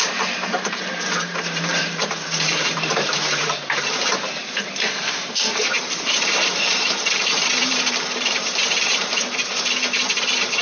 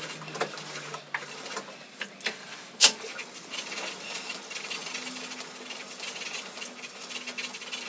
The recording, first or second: second